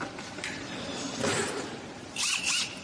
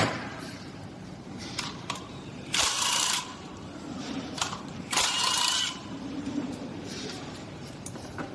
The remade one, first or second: second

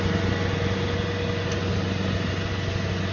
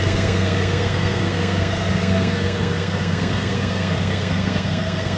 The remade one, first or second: second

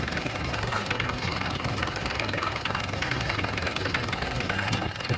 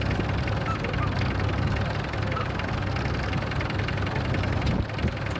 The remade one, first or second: first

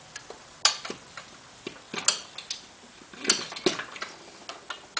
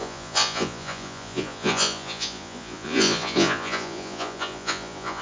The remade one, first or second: second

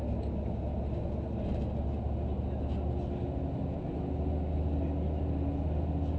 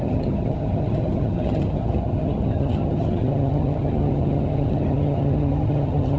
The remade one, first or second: second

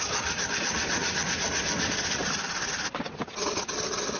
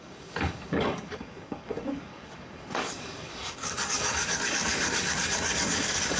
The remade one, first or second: second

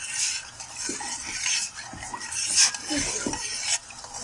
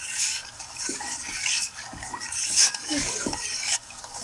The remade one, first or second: second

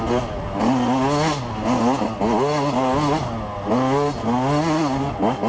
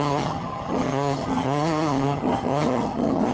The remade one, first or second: second